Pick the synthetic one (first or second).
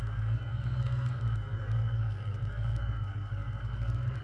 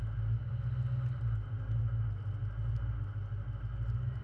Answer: first